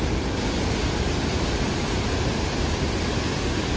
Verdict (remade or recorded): recorded